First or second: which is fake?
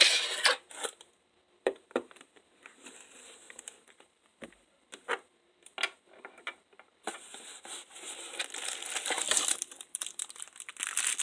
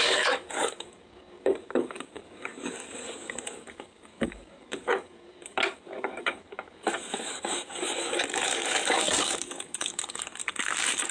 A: second